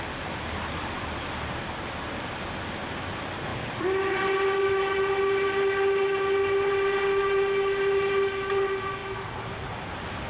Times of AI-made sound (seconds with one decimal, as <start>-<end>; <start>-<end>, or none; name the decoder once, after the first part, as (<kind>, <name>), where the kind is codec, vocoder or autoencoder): none